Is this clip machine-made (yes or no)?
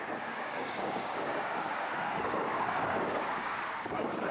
yes